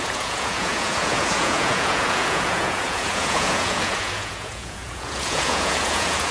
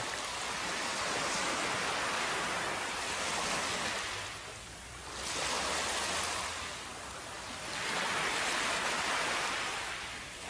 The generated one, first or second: first